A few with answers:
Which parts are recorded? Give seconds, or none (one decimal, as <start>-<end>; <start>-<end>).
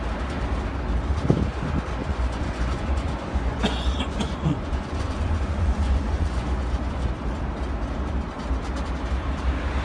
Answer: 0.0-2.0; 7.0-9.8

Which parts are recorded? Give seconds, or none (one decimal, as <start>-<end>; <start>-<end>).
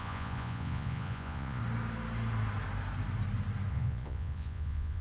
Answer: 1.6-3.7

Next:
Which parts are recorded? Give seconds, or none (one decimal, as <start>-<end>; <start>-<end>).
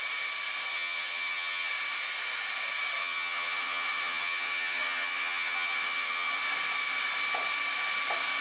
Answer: 0.0-0.7; 1.7-3.0; 6.3-8.4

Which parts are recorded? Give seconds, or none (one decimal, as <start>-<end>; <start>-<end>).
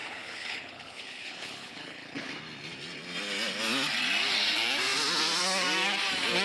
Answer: 2.3-6.4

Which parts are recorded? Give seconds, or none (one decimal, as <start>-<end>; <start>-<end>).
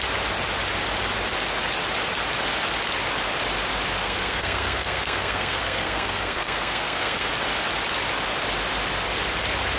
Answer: 0.0-4.0; 7.3-9.8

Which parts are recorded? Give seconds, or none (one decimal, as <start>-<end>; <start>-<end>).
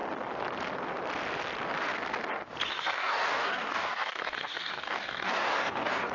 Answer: 0.0-2.7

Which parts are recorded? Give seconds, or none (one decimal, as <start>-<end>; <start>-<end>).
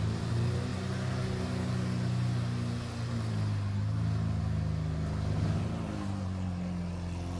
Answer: 0.0-7.4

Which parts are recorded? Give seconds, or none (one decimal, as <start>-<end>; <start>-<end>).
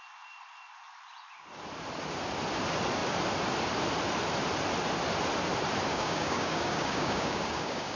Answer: 0.0-5.9